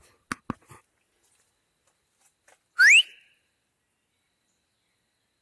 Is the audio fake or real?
real